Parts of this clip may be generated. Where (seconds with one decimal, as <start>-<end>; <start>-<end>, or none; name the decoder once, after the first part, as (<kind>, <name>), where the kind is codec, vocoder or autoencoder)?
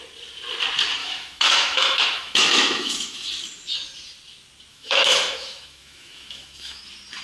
1.0-3.3 (autoencoder, DAC-VAE); 4.7-6.8